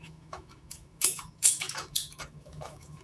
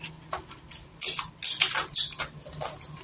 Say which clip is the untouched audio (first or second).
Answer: second